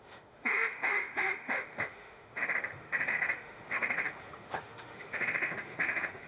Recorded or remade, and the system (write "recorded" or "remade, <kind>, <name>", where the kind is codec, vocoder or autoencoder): remade, autoencoder, DAC-VAE